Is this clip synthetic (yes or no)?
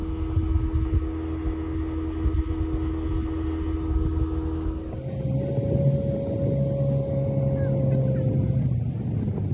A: no